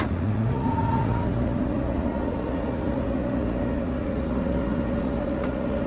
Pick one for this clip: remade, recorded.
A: remade